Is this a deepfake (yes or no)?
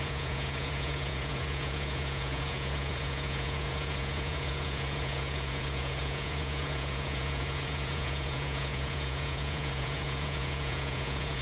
yes